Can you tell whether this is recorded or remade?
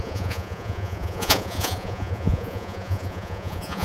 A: remade